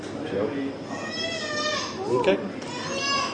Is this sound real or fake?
real